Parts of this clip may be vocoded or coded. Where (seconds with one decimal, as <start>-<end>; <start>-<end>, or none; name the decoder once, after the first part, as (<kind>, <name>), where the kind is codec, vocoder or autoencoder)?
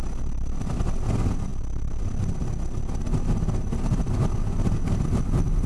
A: none